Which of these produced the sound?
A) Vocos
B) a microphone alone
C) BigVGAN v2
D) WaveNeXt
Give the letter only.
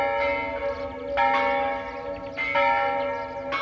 B